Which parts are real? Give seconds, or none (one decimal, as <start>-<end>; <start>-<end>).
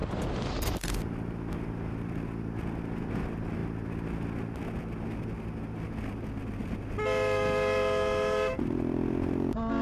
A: 0.0-9.8